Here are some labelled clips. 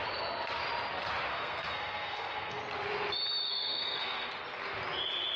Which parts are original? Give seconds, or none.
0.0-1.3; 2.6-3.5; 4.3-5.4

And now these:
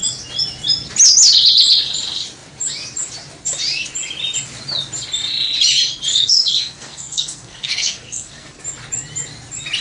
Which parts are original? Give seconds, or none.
0.0-6.1; 8.6-9.8

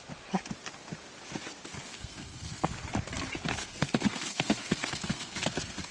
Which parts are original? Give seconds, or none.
0.0-1.9; 2.7-3.5

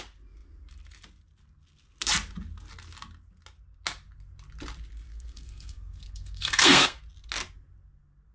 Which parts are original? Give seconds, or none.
0.0-5.1; 7.0-8.3

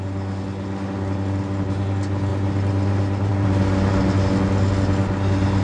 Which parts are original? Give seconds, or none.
0.0-5.6